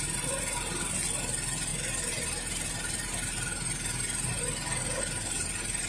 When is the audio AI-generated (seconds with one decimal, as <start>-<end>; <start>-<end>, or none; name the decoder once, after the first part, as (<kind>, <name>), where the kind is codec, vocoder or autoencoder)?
none